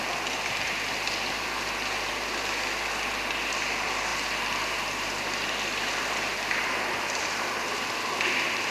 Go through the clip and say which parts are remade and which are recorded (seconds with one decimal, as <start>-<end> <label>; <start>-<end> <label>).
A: 0.0-8.7 recorded